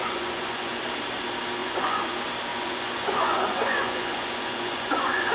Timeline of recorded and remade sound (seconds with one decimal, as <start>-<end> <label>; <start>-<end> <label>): 0.0-0.8 remade; 0.8-1.6 recorded; 1.6-2.1 remade; 2.1-2.5 recorded; 2.5-5.3 remade